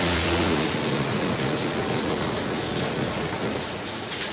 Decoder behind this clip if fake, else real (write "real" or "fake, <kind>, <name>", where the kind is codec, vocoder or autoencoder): fake, vocoder, Vocos